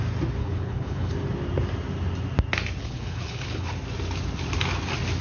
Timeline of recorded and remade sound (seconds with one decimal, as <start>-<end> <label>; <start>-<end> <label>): 0.0-0.4 recorded; 0.4-1.1 remade; 1.1-2.8 recorded; 2.8-3.7 remade; 3.7-5.2 recorded